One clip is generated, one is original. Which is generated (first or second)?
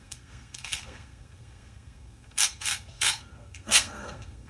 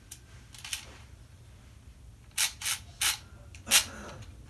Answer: first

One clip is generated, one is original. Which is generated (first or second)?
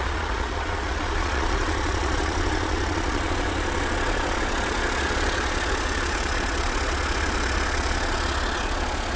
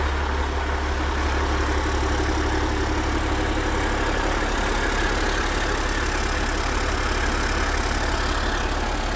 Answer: first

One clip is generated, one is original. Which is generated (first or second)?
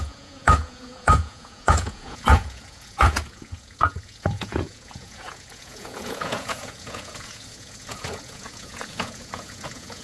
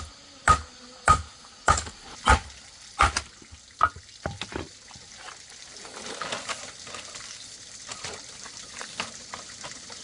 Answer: first